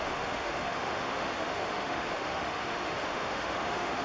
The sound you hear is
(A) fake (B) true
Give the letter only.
A